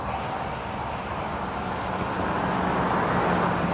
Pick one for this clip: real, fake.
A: real